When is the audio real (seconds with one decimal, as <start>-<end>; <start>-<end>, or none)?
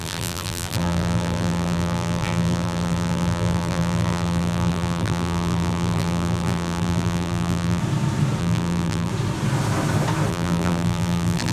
7.8-8.4; 9.1-10.3